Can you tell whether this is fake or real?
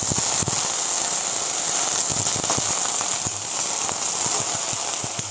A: real